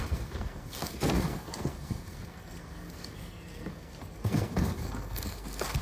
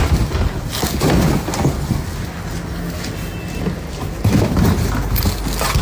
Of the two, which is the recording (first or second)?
second